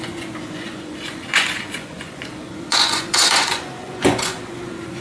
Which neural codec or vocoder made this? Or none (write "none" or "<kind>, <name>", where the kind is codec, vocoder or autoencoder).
vocoder, Vocos